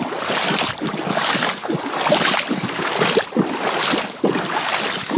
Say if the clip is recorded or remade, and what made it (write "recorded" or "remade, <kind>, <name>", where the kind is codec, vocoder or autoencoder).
recorded